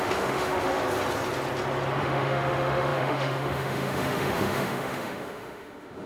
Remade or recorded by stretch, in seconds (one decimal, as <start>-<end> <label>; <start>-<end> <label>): 0.0-0.8 remade; 0.8-2.0 recorded; 2.0-6.1 remade